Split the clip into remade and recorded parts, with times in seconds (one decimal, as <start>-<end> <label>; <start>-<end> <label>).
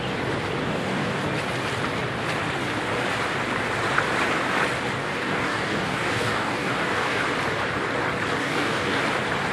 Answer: 0.0-0.6 recorded; 0.6-1.2 remade; 1.2-5.0 recorded; 5.0-7.2 remade; 7.2-8.4 recorded; 8.4-9.0 remade; 9.0-9.5 recorded